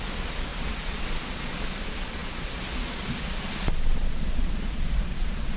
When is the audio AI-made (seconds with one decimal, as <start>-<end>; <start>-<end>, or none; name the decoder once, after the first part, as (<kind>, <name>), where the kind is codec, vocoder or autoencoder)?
0.0-5.6 (vocoder, Vocos)